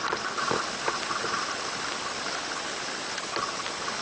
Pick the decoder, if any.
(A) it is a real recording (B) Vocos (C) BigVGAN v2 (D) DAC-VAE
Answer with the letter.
A